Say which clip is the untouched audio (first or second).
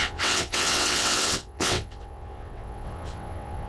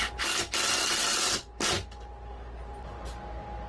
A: second